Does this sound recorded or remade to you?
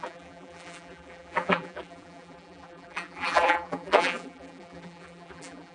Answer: remade